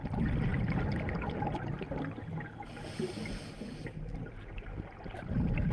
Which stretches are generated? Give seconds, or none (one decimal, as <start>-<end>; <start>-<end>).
none